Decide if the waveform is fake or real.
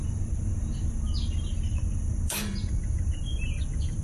fake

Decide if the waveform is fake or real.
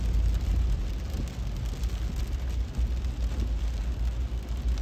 real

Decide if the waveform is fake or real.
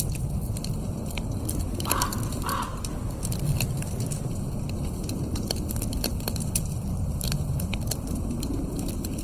real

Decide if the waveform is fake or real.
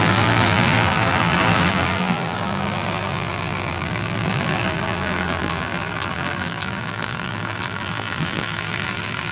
fake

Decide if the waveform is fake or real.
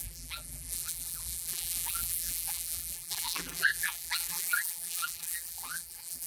fake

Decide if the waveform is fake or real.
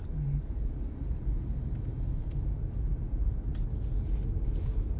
real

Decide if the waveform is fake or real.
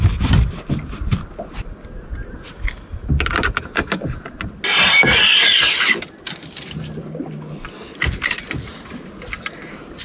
real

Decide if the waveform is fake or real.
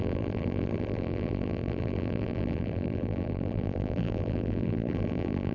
fake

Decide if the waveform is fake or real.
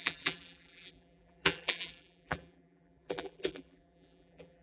fake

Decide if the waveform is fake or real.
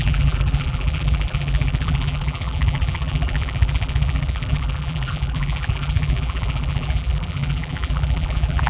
fake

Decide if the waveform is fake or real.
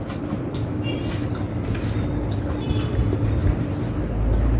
real